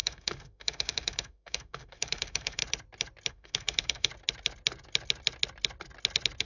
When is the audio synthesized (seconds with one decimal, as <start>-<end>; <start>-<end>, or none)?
0.0-2.6; 3.3-4.1